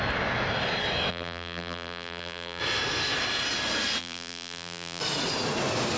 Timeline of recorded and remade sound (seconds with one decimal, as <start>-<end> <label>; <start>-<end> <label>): 0.0-1.1 recorded; 1.1-2.6 remade; 2.6-4.0 recorded; 4.0-5.0 remade; 5.0-6.0 recorded